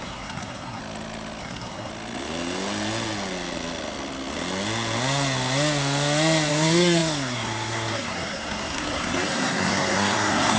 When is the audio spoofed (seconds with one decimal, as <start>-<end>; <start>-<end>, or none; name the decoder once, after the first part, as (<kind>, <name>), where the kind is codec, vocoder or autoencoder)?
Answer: 0.0-0.8 (codec, SNAC); 1.4-1.9; 6.5-10.6